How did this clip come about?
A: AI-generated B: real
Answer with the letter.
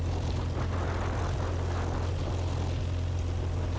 B